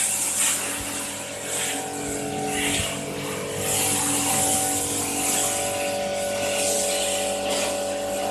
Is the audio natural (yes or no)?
yes